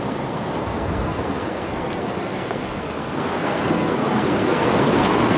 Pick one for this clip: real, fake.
fake